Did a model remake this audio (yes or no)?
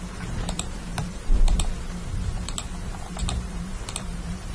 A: yes